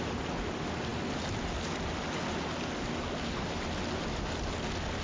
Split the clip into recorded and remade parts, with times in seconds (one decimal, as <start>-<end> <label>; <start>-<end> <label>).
0.0-5.0 recorded